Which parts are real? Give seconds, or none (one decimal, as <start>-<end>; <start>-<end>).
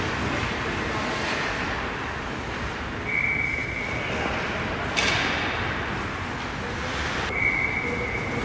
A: 0.0-8.4